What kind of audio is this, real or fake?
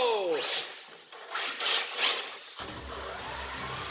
real